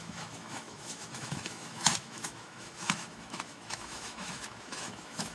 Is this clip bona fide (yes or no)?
no